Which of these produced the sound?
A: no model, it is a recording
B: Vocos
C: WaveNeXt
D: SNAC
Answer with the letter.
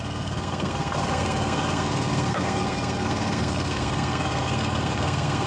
D